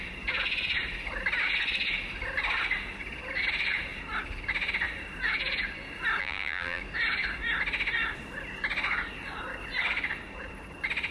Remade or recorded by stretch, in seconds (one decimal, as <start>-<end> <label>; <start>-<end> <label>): 0.0-6.2 recorded; 6.2-6.8 remade; 6.8-11.1 recorded